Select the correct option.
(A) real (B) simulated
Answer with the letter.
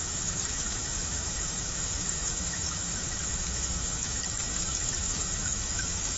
B